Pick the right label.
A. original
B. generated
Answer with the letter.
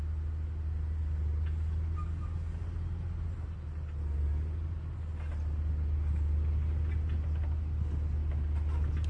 A